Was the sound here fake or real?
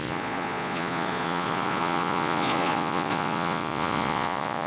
fake